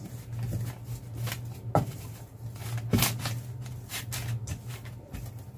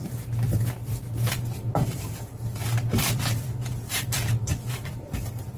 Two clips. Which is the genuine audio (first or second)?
first